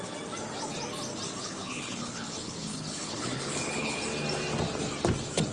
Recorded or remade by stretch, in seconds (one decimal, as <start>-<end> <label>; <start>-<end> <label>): 0.0-1.4 recorded; 1.4-4.0 remade; 4.0-5.5 recorded